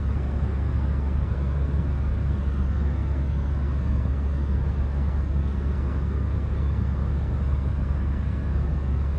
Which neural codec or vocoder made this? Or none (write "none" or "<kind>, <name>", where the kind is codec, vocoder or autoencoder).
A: codec, SNAC